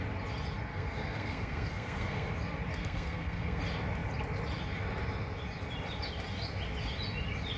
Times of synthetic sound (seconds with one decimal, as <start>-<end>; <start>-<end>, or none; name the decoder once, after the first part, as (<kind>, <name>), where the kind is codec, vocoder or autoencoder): 0.7-2.3 (codec, SNAC); 2.8-3.6